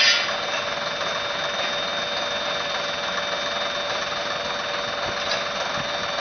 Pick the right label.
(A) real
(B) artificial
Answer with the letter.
A